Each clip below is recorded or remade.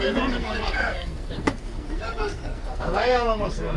remade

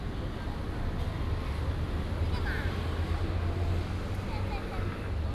recorded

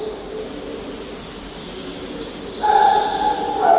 recorded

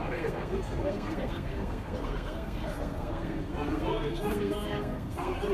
remade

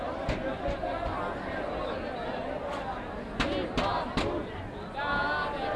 recorded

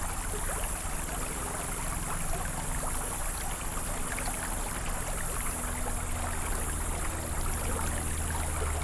recorded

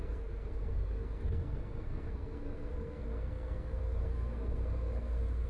remade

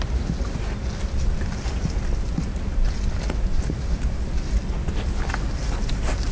recorded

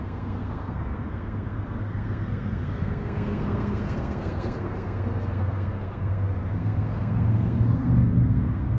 remade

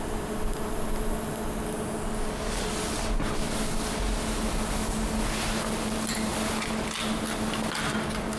recorded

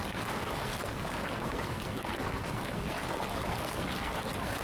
remade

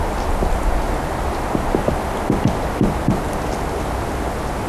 recorded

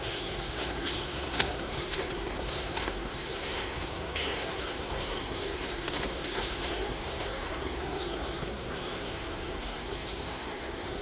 remade